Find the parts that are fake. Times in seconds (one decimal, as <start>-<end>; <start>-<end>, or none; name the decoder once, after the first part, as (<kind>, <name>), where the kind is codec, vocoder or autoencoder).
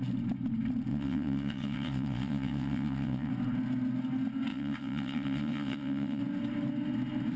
0.9-3.3 (vocoder, WaveNeXt); 4.5-6.2